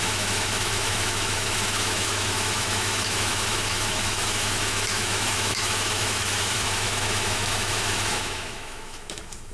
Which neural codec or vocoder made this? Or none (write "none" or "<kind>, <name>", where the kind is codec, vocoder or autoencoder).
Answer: autoencoder, DAC-VAE